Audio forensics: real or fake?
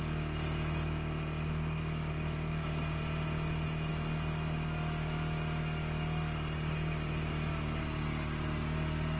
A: real